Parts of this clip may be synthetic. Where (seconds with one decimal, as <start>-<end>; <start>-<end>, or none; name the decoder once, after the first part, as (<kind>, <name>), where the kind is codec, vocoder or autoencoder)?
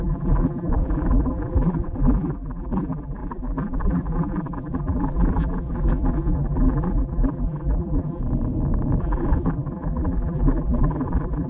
0.0-8.2 (vocoder, BigVGAN v2); 9.0-11.5